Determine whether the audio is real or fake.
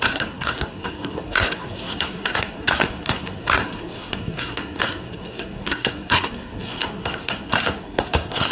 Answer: fake